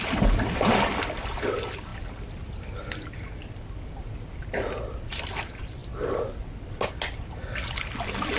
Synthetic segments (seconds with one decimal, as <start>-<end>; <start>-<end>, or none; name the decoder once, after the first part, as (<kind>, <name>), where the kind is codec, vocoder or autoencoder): none